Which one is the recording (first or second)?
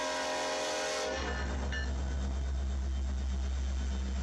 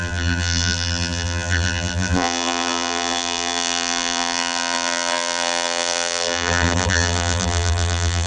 first